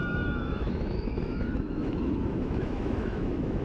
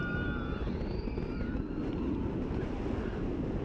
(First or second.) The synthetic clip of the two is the first